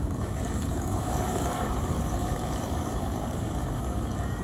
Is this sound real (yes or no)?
no